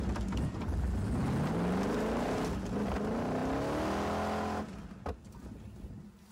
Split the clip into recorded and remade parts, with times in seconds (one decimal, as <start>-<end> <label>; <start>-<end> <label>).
0.0-6.3 recorded